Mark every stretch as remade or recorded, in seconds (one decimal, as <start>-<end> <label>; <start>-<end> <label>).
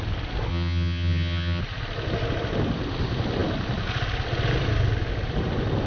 0.0-0.5 recorded; 0.5-1.6 remade; 1.6-5.9 recorded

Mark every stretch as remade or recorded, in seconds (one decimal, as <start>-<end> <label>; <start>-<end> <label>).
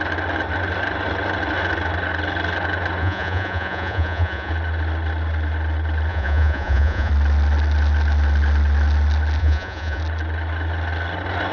0.0-3.0 recorded; 3.0-4.5 remade; 4.5-6.1 recorded; 6.1-7.1 remade; 7.1-9.4 recorded; 9.4-10.0 remade; 10.0-11.5 recorded